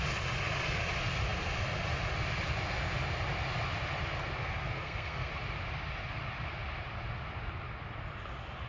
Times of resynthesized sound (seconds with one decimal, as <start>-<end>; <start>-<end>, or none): 4.4-5.3